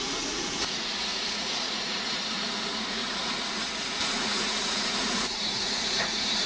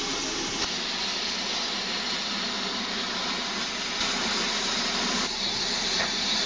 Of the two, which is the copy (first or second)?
first